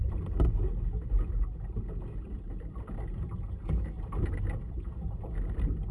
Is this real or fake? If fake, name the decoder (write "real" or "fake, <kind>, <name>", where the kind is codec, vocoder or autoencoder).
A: real